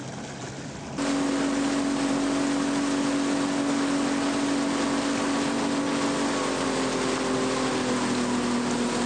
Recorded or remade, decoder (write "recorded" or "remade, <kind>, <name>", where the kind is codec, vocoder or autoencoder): recorded